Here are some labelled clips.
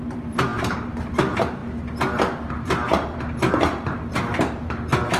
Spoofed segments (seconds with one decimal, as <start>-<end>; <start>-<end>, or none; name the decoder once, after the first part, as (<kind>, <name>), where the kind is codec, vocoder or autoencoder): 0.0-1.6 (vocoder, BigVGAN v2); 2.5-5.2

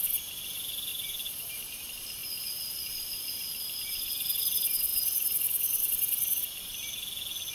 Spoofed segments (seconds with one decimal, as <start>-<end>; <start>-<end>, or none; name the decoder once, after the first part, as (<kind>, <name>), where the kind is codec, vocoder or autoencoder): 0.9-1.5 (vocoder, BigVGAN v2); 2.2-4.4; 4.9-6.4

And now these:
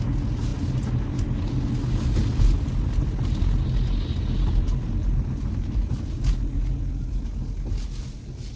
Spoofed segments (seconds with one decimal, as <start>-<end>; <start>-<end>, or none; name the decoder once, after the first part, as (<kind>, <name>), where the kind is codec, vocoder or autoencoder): none

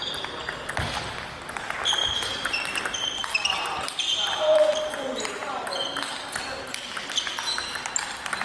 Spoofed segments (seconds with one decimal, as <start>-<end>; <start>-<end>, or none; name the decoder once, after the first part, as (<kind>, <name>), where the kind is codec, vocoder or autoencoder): 2.0-2.6 (vocoder, BigVGAN v2); 3.2-5.7

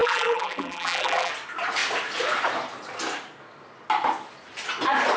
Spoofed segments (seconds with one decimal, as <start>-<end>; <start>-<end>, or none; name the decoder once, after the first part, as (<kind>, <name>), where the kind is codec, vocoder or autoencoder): 0.0-1.3 (vocoder, BigVGAN v2)